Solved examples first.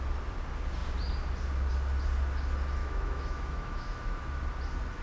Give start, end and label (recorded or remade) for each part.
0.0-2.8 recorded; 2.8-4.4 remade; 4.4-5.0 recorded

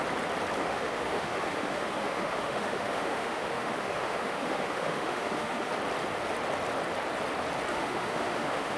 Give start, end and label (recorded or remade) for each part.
0.0-0.6 recorded; 0.6-5.7 remade; 5.7-7.7 recorded; 7.7-8.8 remade

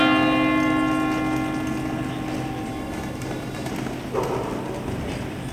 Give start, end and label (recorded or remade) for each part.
0.0-2.7 recorded; 2.7-3.7 remade; 3.7-5.5 recorded